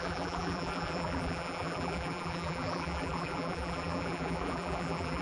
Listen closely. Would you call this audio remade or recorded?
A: remade